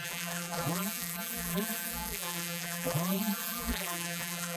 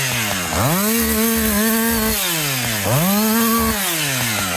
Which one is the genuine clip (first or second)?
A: second